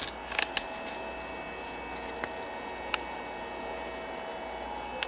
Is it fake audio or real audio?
real